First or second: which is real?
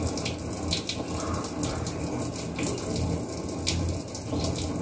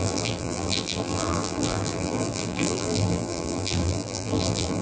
first